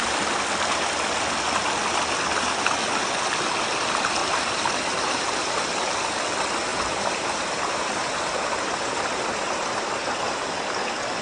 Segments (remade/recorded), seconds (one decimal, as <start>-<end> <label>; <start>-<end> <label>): 0.0-4.2 recorded; 4.2-5.5 remade; 5.5-6.7 recorded; 6.7-10.4 remade; 10.4-11.2 recorded

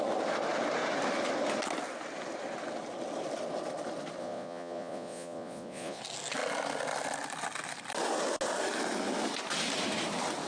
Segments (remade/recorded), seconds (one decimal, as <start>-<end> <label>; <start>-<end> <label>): 0.0-4.2 recorded; 4.2-6.0 remade; 6.0-10.5 recorded

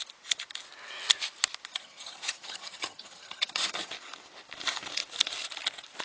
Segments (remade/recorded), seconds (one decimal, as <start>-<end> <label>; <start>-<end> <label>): 0.0-1.7 recorded; 1.7-3.9 remade; 3.9-6.0 recorded

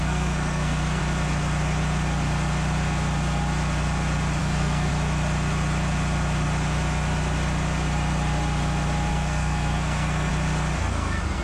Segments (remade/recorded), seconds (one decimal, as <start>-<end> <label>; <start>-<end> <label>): 0.0-1.0 remade; 1.0-4.4 recorded; 4.4-4.9 remade; 4.9-9.1 recorded; 9.1-10.3 remade; 10.3-10.9 recorded; 10.9-11.4 remade

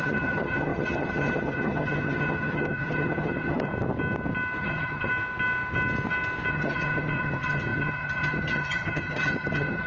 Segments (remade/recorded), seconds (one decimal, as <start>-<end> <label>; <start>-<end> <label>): 0.0-3.7 remade; 3.7-4.6 recorded; 4.6-5.1 remade; 5.1-6.5 recorded; 6.5-9.9 remade

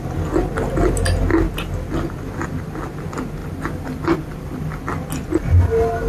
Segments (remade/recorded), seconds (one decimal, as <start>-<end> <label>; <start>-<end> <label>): 0.0-3.4 recorded; 3.4-4.8 remade; 4.8-6.1 recorded